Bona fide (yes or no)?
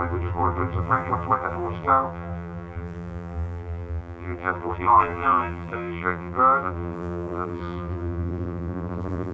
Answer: no